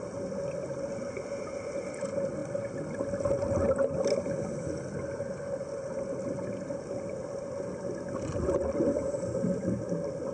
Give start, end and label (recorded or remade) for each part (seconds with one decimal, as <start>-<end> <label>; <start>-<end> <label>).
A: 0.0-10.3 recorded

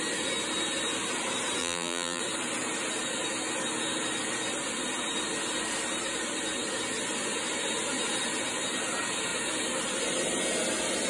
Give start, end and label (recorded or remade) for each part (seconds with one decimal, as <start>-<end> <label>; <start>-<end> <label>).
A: 0.0-1.6 recorded; 1.6-2.2 remade; 2.2-11.1 recorded

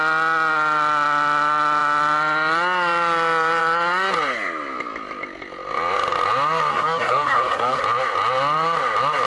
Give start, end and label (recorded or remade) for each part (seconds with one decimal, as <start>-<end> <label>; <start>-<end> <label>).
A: 0.0-6.7 recorded; 6.7-7.8 remade; 7.8-9.3 recorded

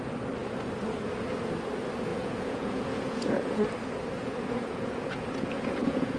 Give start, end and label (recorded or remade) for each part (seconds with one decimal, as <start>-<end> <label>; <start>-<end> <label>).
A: 0.0-2.1 recorded; 2.1-3.7 remade; 3.7-4.2 recorded; 4.2-6.2 remade

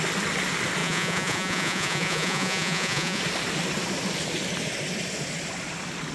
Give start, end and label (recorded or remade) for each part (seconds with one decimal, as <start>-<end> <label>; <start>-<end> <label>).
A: 0.0-0.8 recorded; 0.8-3.2 remade; 3.2-6.1 recorded